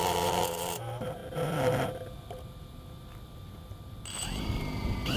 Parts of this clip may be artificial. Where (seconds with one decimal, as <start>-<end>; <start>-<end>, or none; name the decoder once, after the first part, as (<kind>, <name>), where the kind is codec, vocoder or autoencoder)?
0.0-1.2 (vocoder, BigVGAN v2); 4.2-5.2